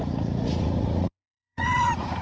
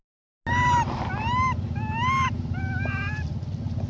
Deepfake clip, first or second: first